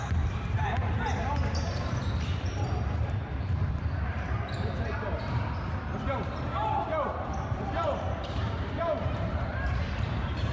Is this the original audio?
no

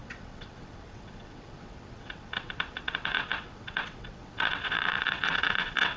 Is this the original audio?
no